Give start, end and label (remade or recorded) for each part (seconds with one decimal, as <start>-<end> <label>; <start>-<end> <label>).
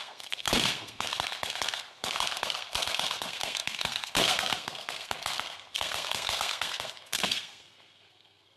0.0-8.6 remade